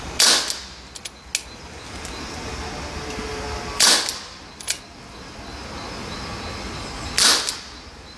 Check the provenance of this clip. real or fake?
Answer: real